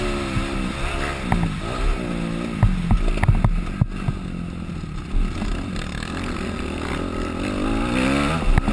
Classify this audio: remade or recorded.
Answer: recorded